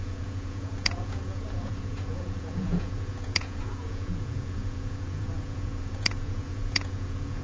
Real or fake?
fake